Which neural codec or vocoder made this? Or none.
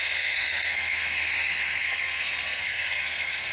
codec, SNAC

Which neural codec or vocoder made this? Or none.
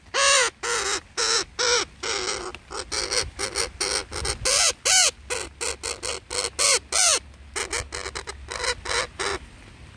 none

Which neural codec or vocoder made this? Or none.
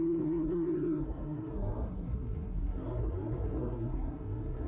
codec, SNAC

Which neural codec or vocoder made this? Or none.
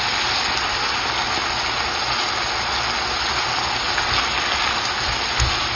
none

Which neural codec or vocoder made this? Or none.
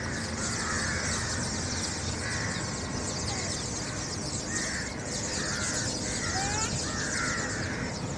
none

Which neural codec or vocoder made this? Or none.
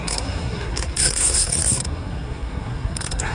codec, SNAC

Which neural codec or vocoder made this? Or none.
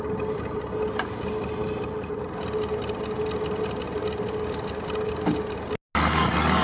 none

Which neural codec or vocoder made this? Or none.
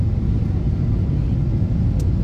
none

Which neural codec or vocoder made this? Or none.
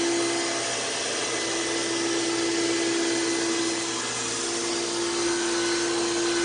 none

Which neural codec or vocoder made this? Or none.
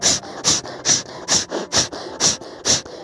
none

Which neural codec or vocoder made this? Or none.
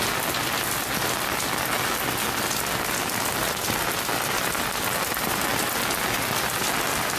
none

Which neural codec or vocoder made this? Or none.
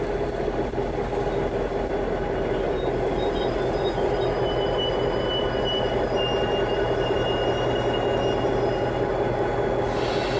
none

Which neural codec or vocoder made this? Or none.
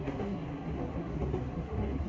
codec, SNAC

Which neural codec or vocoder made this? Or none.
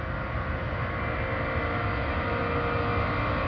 none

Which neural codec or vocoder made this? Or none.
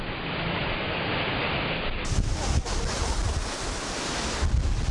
none